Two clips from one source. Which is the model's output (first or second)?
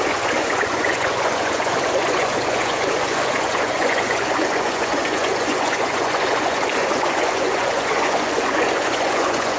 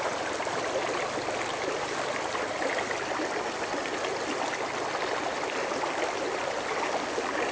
first